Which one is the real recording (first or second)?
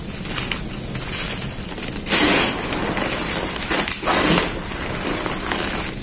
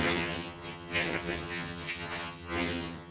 first